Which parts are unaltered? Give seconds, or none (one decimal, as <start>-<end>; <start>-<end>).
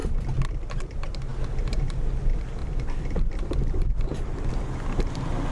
none